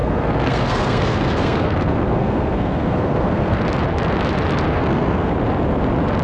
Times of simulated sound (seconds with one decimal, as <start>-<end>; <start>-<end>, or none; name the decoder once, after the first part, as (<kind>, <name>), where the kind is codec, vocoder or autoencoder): 0.0-3.6 (codec, SNAC); 4.7-5.3